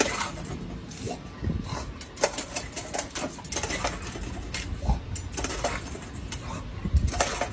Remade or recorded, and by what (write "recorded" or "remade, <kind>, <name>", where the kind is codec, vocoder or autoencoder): recorded